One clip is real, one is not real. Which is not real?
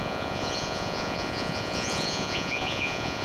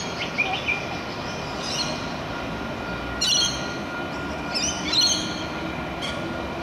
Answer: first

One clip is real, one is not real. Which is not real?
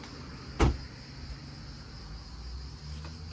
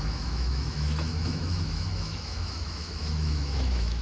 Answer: second